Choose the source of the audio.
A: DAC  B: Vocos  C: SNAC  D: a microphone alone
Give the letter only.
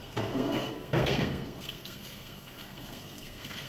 C